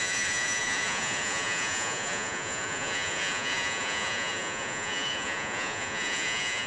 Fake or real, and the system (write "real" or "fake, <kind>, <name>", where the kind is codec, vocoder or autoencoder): fake, vocoder, Vocos